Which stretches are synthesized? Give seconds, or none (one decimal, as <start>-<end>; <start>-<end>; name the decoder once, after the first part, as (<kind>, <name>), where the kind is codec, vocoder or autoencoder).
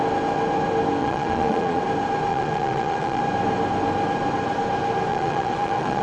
1.0-1.8 (vocoder, Vocos); 2.3-3.2; 5.1-6.0